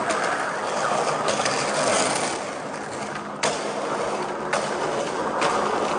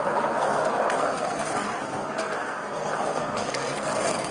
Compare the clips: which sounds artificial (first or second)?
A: second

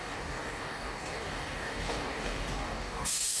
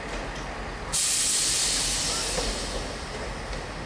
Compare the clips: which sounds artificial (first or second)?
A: first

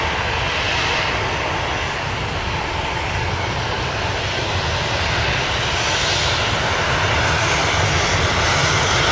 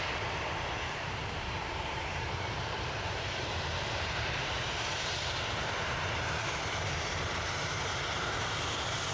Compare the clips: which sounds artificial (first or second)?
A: second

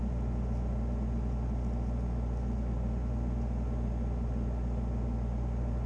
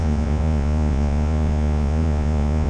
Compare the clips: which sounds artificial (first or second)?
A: second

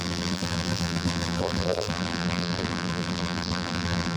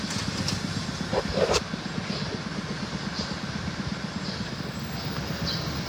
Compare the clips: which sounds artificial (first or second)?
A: first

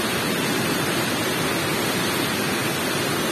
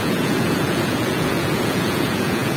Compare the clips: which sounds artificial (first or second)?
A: second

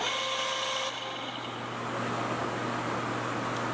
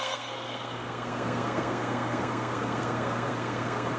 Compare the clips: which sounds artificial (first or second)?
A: second